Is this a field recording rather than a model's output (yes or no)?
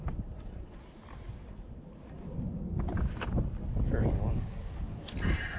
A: yes